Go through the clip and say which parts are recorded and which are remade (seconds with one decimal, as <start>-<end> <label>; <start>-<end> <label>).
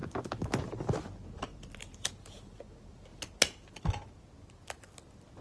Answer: 0.0-0.6 remade; 0.6-1.5 recorded; 1.5-2.1 remade; 2.1-5.4 recorded